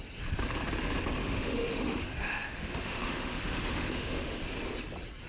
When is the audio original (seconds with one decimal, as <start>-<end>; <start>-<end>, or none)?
0.0-1.2; 4.4-5.3